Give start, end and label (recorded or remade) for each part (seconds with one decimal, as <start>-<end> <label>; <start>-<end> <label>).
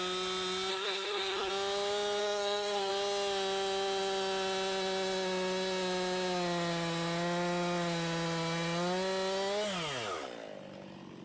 0.0-0.7 recorded; 0.7-1.5 remade; 1.5-2.2 recorded; 2.2-2.9 remade; 2.9-11.2 recorded